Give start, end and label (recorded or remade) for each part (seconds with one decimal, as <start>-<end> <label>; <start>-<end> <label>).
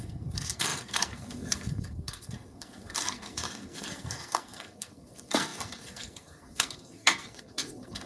0.0-8.1 remade